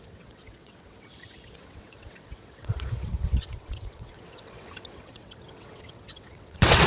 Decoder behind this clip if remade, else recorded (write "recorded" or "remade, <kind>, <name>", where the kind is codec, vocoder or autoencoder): remade, vocoder, WaveNeXt